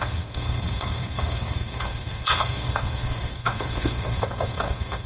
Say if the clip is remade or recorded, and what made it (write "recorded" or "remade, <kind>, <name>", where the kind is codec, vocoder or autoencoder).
remade, codec, SNAC